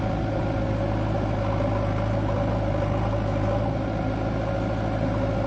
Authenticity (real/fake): real